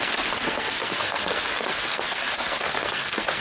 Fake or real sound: fake